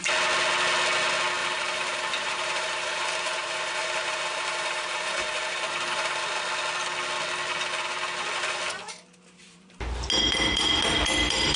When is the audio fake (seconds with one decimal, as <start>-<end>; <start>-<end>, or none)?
1.4-6.2; 9.4-10.0